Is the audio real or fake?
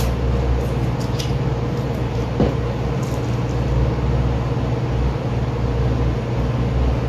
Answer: real